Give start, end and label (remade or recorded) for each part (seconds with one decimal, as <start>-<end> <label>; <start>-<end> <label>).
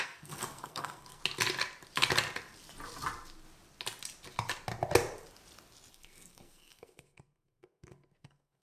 0.0-1.2 remade; 1.2-5.9 recorded; 5.9-8.6 remade